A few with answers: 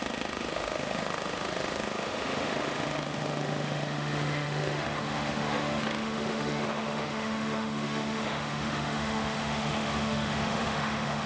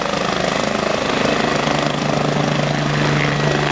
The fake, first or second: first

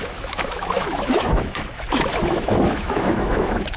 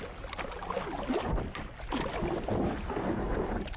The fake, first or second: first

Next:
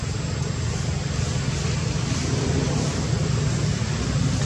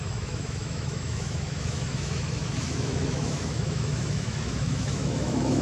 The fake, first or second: second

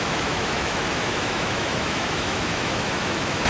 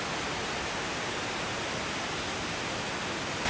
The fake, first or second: first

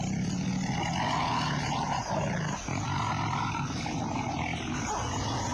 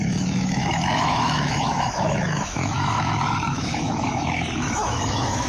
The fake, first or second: second